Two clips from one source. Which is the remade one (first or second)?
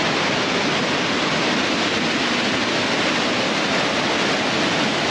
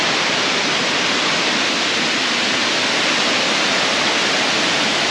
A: second